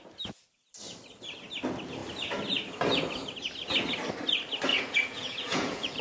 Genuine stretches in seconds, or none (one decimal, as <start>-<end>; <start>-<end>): 0.0-4.7